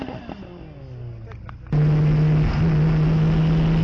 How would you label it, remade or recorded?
recorded